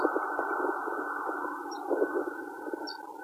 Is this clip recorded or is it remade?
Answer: recorded